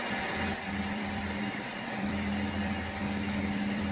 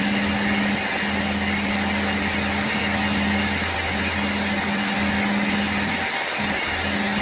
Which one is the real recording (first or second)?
second